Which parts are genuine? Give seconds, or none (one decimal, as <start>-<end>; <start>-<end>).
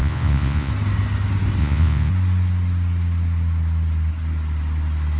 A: 0.7-1.6; 2.1-5.2